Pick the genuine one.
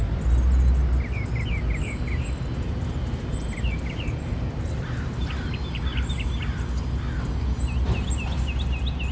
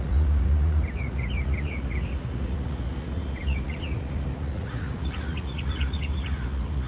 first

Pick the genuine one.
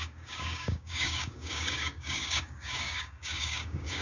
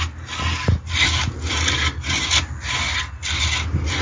second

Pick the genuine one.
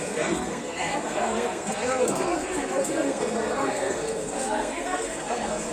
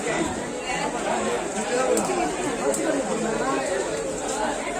second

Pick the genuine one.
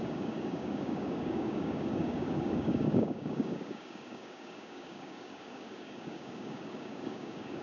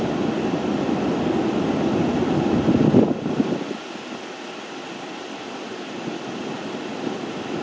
second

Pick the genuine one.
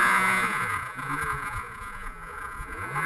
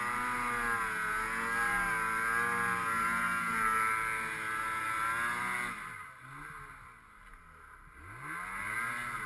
second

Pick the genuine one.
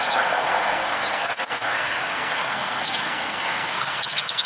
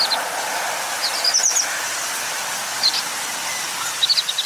second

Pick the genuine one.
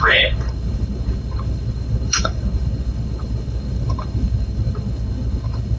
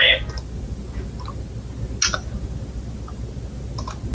second